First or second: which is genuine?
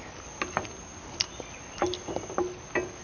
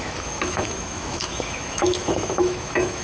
first